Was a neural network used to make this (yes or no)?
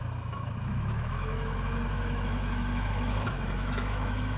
yes